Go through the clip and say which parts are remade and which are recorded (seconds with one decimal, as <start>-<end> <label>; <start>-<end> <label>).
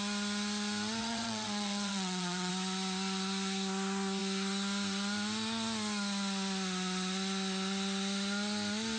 0.0-1.0 recorded; 1.0-2.5 remade; 2.5-9.0 recorded